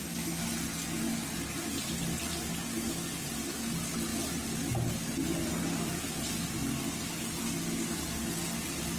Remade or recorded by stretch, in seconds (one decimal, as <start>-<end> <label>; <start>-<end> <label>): 0.0-9.0 recorded